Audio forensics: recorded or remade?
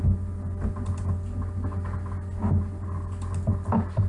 recorded